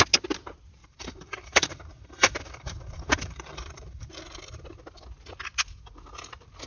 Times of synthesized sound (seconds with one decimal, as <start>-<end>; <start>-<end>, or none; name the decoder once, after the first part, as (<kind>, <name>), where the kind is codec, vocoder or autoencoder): 0.8-4.2 (vocoder, BigVGAN v2)